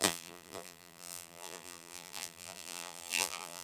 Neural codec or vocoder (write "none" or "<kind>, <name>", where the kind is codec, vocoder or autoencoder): vocoder, BigVGAN v2